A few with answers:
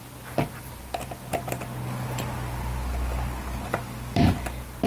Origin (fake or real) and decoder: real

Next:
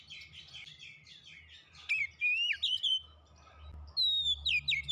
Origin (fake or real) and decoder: real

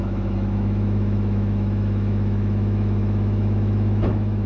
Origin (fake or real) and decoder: fake, autoencoder, DAC-VAE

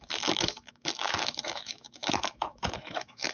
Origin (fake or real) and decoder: fake, autoencoder, DAC-VAE